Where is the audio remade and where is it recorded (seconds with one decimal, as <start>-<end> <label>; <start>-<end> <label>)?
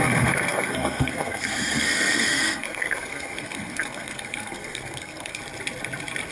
0.0-5.4 remade; 5.4-6.3 recorded